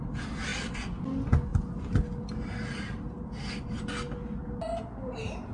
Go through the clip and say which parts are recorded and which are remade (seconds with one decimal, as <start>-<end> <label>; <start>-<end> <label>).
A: 0.0-5.5 recorded